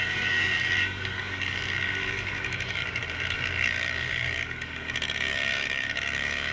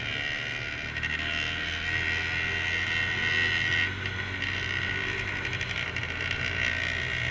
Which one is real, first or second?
second